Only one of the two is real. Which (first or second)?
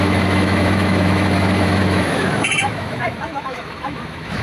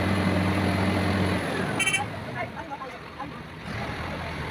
second